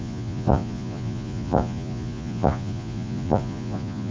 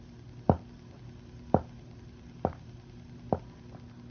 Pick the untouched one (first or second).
second